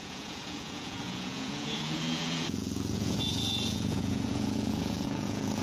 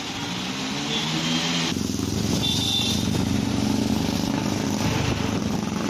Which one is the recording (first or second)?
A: second